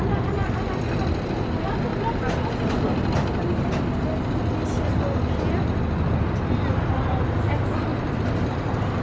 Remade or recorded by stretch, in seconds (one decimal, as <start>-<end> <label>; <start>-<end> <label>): 0.0-9.0 recorded